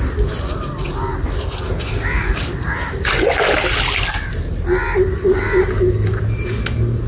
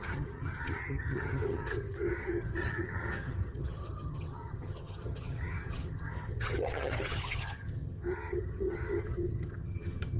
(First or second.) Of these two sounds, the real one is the first